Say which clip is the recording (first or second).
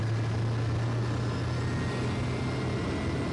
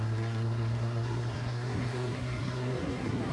first